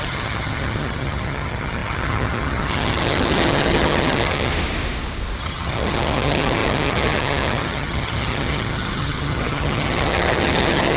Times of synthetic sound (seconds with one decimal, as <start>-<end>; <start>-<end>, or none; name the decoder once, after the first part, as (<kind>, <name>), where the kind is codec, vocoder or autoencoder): 0.0-4.5 (vocoder, HiFi-GAN); 5.4-11.0